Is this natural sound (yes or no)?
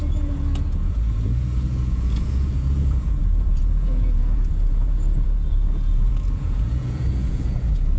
no